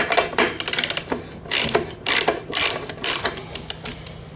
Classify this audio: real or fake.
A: real